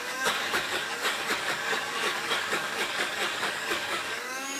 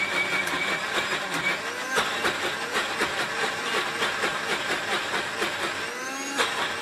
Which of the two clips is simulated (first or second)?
first